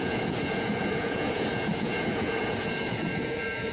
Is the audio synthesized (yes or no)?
yes